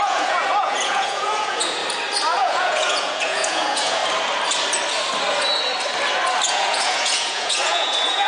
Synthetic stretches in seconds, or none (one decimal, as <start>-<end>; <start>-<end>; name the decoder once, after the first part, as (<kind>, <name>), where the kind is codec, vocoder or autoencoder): 0.0-1.8 (vocoder, Vocos); 2.4-4.0; 6.5-8.3